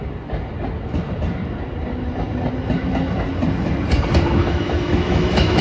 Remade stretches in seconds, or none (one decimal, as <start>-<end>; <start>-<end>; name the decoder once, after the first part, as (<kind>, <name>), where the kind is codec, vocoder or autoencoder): 4.4-5.6 (autoencoder, DAC-VAE)